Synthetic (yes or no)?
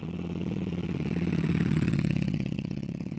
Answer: yes